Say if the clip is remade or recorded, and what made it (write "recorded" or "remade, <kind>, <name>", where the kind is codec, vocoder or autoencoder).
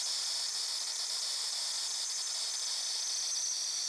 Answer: recorded